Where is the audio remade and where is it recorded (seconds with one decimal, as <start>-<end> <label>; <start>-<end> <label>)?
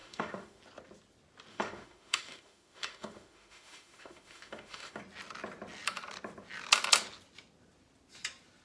0.0-0.6 remade; 0.6-1.5 recorded; 1.5-5.0 remade; 5.0-8.6 recorded